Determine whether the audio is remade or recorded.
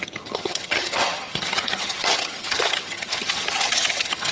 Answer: remade